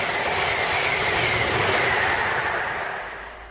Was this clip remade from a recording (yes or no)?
no